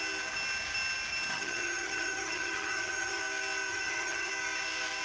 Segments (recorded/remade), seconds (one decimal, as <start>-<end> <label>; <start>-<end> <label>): 0.0-1.3 recorded; 1.3-3.2 remade; 3.2-3.7 recorded; 3.7-4.3 remade; 4.3-5.0 recorded

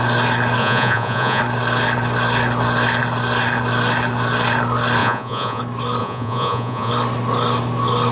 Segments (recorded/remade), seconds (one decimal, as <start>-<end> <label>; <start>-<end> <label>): 0.0-0.6 recorded; 0.6-1.4 remade; 1.4-5.0 recorded; 5.0-5.6 remade; 5.6-6.0 recorded; 6.0-6.9 remade; 6.9-8.1 recorded

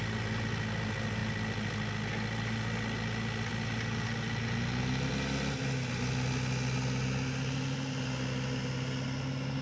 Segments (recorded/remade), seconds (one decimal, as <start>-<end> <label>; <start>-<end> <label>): 0.0-9.6 recorded